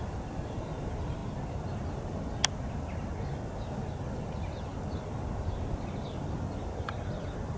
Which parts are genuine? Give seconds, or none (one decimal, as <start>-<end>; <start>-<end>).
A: 0.0-7.6